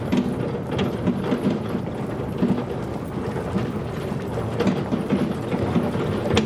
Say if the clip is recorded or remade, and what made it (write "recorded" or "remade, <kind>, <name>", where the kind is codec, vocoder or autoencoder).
recorded